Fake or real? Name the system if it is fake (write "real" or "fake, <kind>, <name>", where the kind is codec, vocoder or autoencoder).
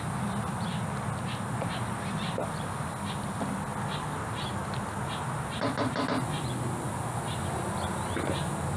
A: real